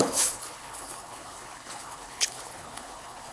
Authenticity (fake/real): fake